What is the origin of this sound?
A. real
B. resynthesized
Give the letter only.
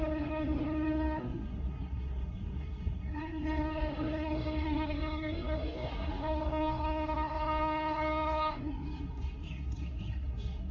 B